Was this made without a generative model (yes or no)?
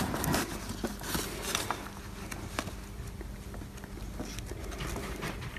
yes